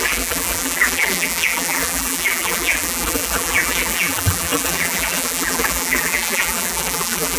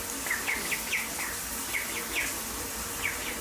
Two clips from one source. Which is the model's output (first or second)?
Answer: first